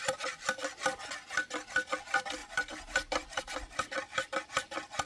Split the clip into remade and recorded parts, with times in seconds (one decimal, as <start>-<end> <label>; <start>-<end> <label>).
0.0-2.4 recorded; 2.4-3.4 remade; 3.4-5.1 recorded